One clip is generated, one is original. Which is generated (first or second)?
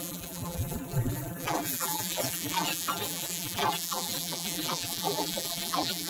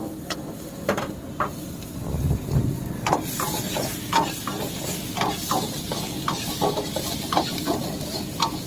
first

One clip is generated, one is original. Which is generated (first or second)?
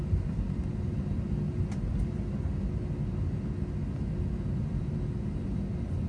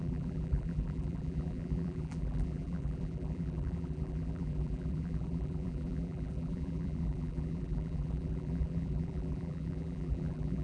second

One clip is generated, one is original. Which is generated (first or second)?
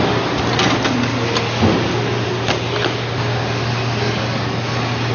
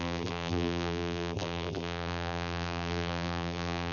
second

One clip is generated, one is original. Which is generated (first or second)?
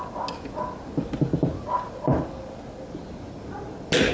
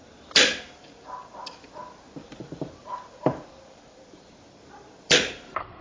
second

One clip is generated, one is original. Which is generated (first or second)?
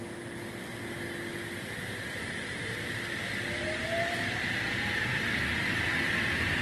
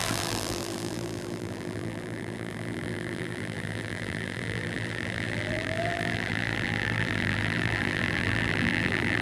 second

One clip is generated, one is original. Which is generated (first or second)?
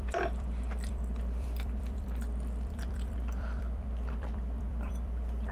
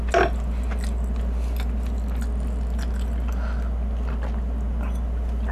first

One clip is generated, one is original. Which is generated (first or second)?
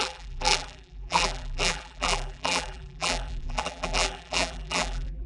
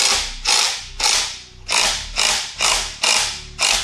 first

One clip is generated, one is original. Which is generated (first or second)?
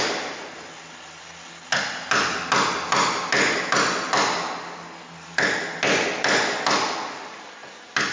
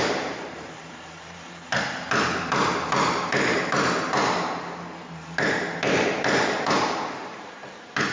second